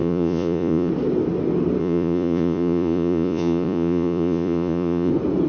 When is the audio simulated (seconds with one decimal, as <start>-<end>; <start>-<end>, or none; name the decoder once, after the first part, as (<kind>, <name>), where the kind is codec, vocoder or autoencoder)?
0.0-0.9 (vocoder, Vocos); 1.8-5.1